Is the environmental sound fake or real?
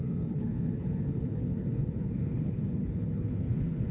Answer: fake